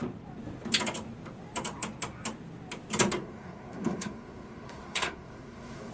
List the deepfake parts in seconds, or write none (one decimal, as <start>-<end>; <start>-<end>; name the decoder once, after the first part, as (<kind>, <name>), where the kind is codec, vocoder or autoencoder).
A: 3.2-5.9 (codec, SNAC)